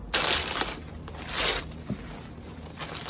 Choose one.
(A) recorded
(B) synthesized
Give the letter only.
A